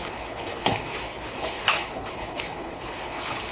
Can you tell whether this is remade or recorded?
remade